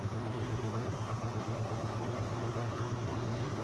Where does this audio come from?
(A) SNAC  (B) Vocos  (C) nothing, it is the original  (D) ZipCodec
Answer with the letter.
A